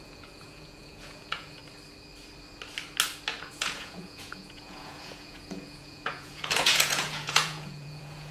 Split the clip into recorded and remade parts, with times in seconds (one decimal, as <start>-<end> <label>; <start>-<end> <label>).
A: 0.0-1.6 remade; 1.6-3.4 recorded; 3.4-8.3 remade

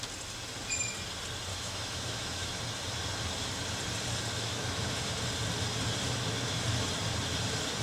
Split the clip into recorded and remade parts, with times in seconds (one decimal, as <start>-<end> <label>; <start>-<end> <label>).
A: 0.0-1.5 recorded; 1.5-2.6 remade; 2.6-4.3 recorded; 4.3-5.0 remade; 5.0-7.8 recorded